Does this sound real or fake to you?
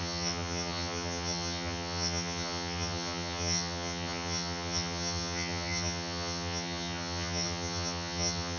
fake